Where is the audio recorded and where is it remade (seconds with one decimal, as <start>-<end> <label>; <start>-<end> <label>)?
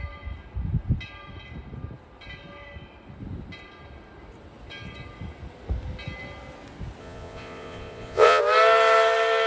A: 0.0-7.0 recorded; 7.0-8.4 remade; 8.4-9.5 recorded